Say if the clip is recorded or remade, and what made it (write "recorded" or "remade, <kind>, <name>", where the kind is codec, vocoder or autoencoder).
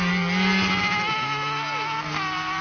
recorded